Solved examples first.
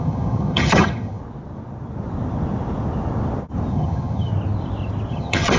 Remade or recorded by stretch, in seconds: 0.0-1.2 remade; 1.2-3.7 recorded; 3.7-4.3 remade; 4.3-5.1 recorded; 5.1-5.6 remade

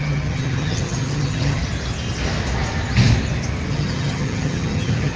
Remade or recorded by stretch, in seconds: 0.0-1.6 remade; 1.6-3.7 recorded; 3.7-5.2 remade

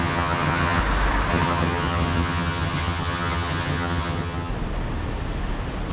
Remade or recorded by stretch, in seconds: 0.0-0.8 remade; 0.8-1.3 recorded; 1.3-4.5 remade; 4.5-5.9 recorded

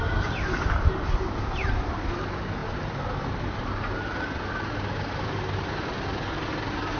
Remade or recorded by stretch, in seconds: 0.0-7.0 recorded